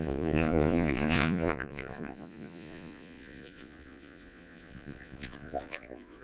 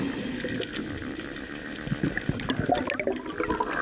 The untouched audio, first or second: second